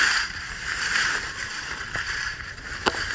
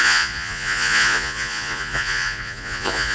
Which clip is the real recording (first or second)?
first